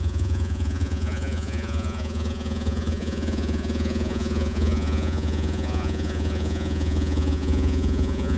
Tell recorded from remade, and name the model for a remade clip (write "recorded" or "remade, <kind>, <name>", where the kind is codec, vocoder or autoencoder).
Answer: remade, vocoder, Vocos